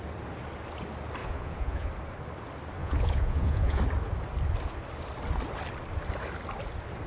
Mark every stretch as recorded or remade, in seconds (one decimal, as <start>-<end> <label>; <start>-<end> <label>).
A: 0.0-1.2 recorded; 1.2-1.9 remade; 1.9-2.8 recorded; 2.8-3.8 remade; 3.8-7.1 recorded